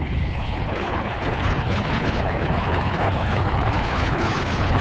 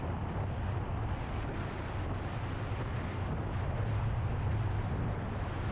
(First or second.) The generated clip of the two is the first